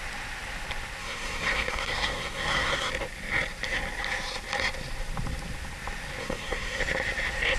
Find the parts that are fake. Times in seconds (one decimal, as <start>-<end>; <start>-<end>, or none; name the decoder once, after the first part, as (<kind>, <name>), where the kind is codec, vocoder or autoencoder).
1.0-2.9 (codec, SNAC); 6.2-6.8